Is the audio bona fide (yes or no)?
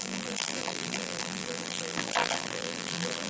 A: no